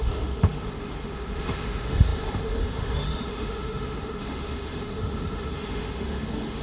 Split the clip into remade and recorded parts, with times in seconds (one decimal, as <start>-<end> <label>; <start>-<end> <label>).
0.0-6.6 remade